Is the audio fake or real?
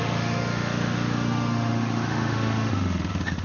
fake